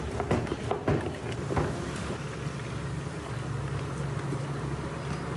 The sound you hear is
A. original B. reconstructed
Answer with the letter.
A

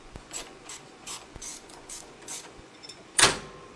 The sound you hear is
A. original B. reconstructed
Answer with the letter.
B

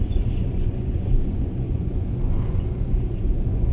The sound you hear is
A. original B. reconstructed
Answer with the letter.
B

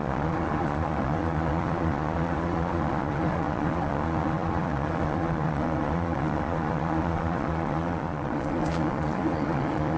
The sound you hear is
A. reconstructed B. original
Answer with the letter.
A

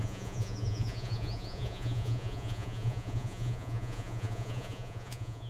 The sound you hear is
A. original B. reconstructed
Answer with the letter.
B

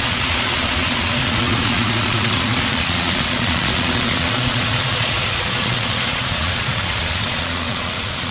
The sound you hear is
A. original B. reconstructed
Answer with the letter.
B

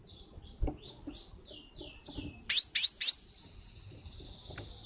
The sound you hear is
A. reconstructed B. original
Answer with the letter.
B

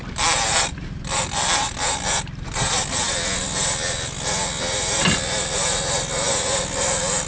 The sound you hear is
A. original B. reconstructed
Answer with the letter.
A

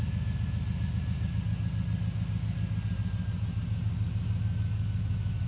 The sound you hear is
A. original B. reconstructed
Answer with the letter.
A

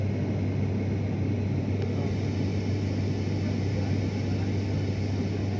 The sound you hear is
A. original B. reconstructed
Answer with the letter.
A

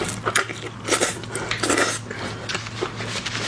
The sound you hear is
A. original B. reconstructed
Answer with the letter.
A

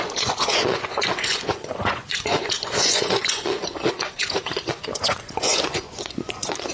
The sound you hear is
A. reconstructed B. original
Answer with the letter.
A